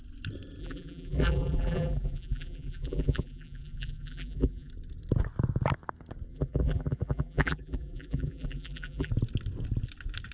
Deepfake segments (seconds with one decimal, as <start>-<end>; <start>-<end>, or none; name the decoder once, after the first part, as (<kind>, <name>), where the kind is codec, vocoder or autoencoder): 0.6-4.7 (vocoder, BigVGAN v2); 6.3-9.1